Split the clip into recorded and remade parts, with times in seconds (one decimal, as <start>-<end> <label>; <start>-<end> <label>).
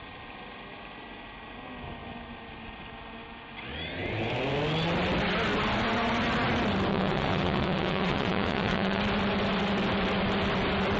0.0-6.9 recorded; 6.9-9.0 remade; 9.0-11.0 recorded